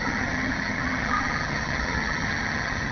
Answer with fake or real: fake